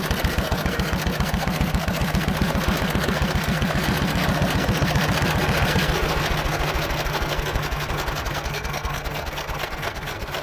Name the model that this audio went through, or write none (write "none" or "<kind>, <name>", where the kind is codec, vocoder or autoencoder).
codec, SNAC